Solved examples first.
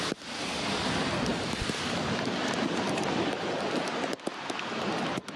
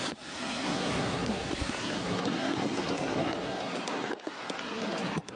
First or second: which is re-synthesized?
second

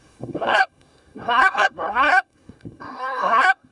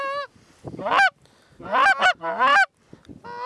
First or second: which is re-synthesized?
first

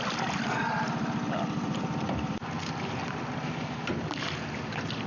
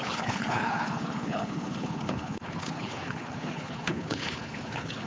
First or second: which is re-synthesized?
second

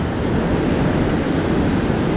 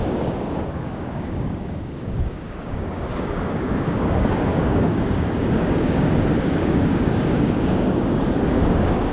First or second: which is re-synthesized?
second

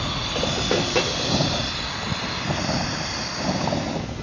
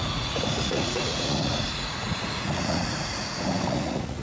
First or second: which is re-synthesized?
second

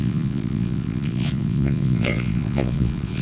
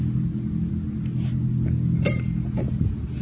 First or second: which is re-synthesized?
first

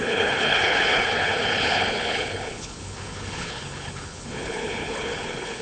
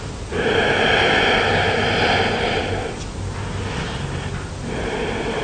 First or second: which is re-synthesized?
first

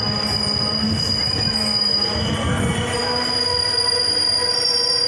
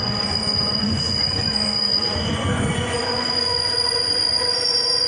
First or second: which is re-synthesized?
second